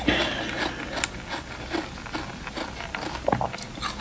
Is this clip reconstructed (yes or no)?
no